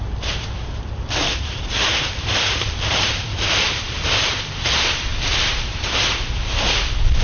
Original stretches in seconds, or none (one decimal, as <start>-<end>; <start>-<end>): 0.0-1.2; 4.3-7.2